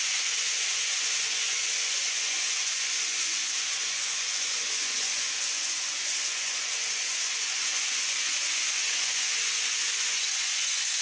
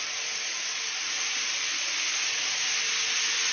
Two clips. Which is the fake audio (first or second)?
first